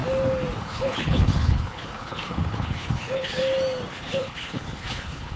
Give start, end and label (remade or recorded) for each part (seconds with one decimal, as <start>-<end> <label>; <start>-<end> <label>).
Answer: 0.0-0.6 recorded; 0.6-3.4 remade; 3.4-3.9 recorded; 3.9-5.4 remade